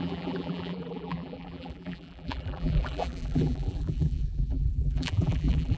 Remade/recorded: remade